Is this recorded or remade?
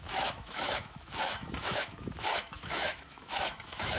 remade